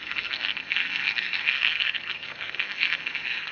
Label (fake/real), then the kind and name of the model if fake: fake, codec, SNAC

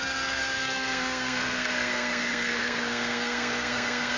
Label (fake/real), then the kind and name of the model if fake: fake, codec, SNAC